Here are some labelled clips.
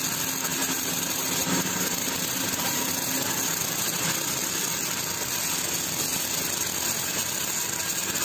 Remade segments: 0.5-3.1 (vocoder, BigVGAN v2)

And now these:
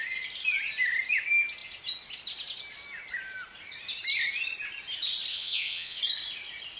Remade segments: 5.3-6.0 (vocoder, Vocos)

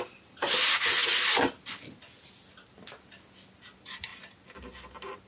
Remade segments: none

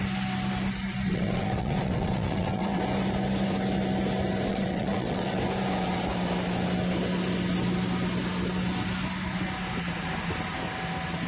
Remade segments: 1.1-2.8 (vocoder, WaveNeXt); 4.5-5.4